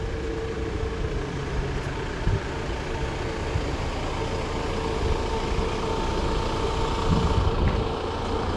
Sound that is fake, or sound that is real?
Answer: real